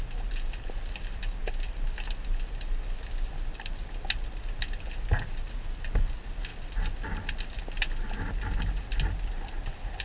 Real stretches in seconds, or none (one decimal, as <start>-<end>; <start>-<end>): 0.0-10.0